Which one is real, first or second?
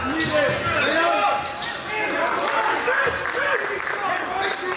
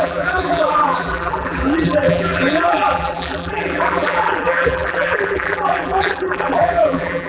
first